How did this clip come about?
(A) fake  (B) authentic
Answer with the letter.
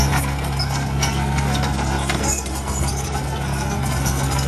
A